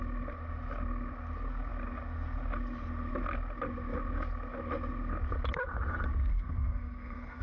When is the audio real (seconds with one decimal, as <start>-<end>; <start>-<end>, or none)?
0.0-6.3